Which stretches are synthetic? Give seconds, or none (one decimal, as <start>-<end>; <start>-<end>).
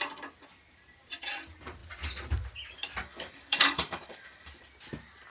3.0-4.5